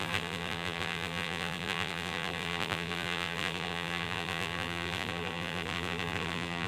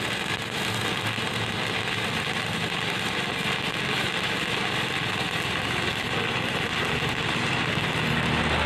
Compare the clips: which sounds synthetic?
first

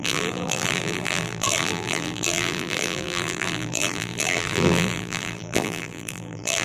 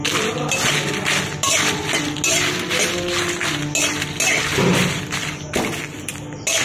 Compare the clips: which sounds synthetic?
first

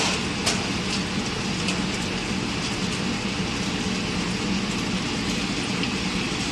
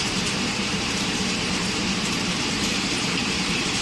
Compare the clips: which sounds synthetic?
second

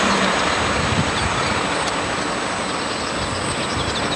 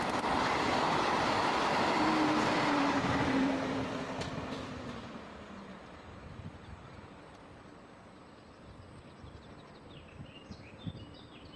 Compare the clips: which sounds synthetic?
second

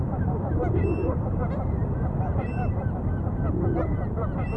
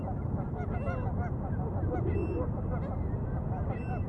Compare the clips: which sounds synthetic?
first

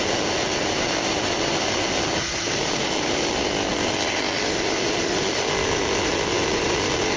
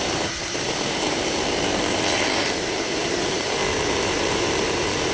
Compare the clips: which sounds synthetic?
second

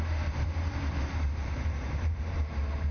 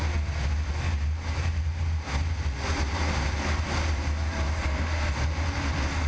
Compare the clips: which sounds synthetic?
first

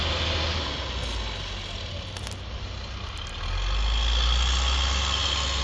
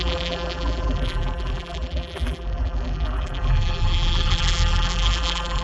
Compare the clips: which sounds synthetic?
second